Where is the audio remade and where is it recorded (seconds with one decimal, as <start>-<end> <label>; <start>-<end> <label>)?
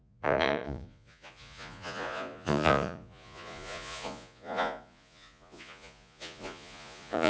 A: 0.0-7.3 remade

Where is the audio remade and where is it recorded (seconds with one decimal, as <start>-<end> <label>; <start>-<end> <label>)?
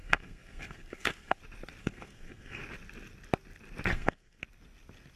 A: 0.0-1.4 remade; 1.4-1.8 recorded; 1.8-2.6 remade; 2.6-3.9 recorded; 3.9-4.4 remade; 4.4-5.2 recorded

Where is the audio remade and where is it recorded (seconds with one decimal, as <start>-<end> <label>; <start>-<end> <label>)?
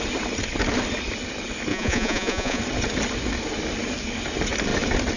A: 0.0-1.7 recorded; 1.7-2.6 remade; 2.6-5.2 recorded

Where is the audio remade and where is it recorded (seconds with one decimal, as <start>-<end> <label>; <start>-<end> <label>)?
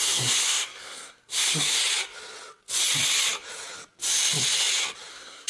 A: 0.0-1.8 remade; 1.8-5.1 recorded; 5.1-5.5 remade